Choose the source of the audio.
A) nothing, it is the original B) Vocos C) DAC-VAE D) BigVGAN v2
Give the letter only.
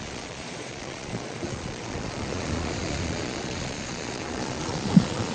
B